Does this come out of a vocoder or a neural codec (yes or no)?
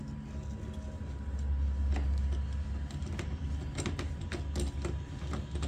no